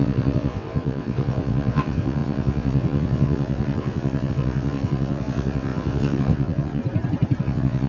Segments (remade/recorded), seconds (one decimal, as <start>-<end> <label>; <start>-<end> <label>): 0.0-6.8 remade; 6.8-7.4 recorded; 7.4-7.9 remade